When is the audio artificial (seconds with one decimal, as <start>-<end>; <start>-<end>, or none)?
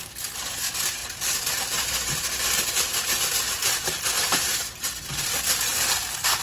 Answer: 0.0-5.7